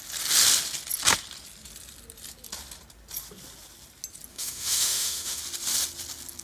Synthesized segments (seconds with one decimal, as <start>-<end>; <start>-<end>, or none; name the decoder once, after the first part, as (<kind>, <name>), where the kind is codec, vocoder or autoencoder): 4.3-5.4 (autoencoder, DAC-VAE)